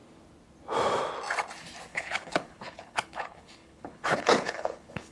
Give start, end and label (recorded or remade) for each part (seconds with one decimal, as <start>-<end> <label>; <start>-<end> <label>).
0.0-1.9 recorded; 1.9-5.1 remade